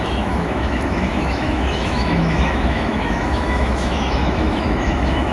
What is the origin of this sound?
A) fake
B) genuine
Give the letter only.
A